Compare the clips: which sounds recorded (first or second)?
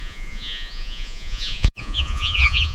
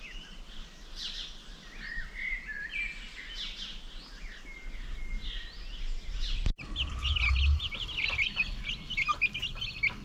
second